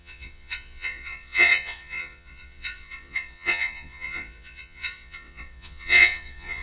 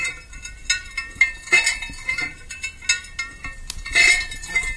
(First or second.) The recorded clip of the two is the second